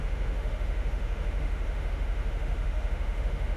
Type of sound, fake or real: fake